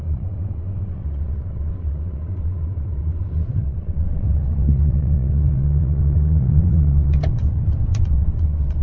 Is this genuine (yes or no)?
no